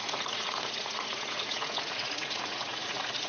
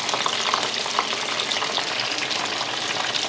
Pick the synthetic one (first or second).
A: first